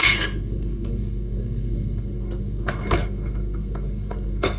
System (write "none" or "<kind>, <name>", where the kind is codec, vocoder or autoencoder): codec, SNAC